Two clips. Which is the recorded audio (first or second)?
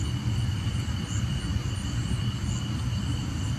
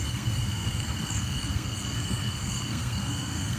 first